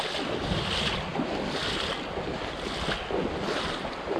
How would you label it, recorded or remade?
recorded